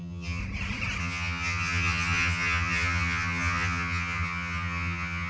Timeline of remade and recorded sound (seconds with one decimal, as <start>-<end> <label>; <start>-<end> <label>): 0.0-0.4 remade; 0.4-1.0 recorded; 1.0-5.3 remade